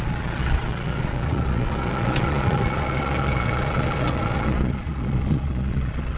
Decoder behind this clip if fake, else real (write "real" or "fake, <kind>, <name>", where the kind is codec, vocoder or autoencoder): fake, vocoder, Vocos